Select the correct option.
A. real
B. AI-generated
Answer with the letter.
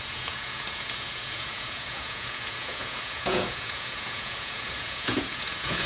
B